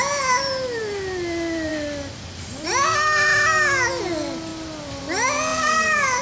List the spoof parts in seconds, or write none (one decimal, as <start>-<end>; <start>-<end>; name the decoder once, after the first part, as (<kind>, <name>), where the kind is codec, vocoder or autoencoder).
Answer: 5.5-6.2 (vocoder, BigVGAN v2)